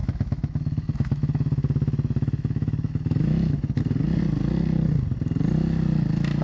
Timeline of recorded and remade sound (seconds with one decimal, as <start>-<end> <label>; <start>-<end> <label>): 0.0-3.8 remade; 3.8-6.4 recorded